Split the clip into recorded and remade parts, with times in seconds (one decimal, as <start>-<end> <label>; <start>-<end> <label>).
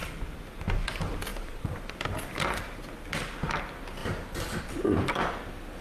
0.0-1.3 recorded; 1.3-1.8 remade; 1.8-4.0 recorded; 4.0-4.6 remade; 4.6-5.8 recorded